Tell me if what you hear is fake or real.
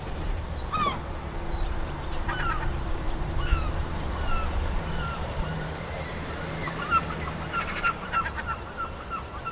fake